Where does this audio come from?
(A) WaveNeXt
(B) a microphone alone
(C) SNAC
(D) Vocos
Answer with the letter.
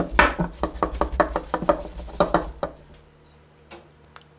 B